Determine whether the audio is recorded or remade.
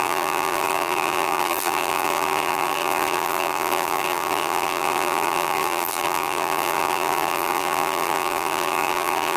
remade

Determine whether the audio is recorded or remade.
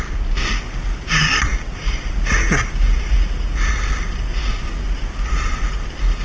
recorded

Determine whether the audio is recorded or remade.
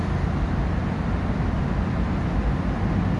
recorded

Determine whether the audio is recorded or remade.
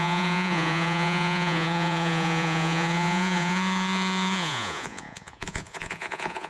remade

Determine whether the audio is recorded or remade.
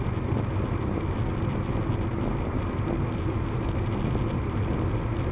recorded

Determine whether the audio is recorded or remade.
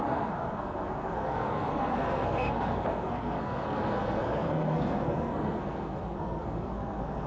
remade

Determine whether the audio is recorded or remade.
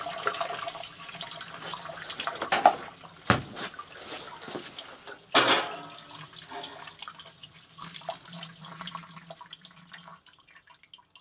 recorded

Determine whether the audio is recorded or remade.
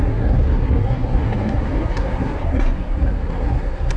remade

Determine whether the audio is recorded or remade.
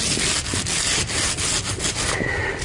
recorded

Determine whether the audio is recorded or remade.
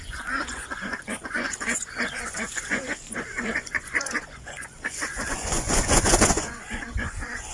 remade